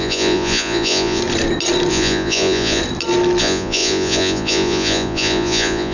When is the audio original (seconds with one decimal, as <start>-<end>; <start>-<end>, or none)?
1.2-1.9; 2.8-3.4